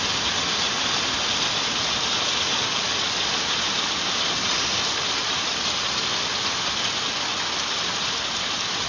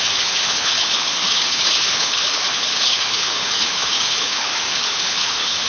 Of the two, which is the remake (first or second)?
second